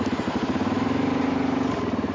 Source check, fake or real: fake